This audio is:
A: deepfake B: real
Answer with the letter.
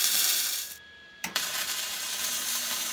A